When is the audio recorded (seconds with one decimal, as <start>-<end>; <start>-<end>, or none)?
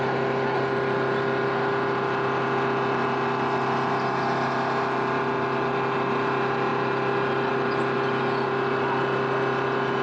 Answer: 0.0-10.0